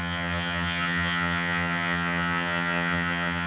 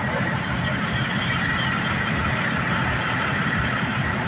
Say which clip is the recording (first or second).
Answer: second